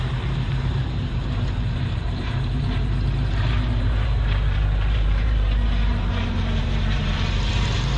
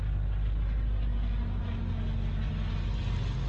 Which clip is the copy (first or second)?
first